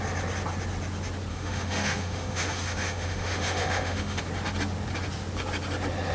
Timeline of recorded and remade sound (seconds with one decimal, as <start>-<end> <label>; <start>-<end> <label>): 0.0-1.3 recorded; 1.3-4.2 remade; 4.2-6.1 recorded